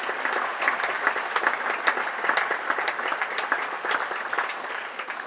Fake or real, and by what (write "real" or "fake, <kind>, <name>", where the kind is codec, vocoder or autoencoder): real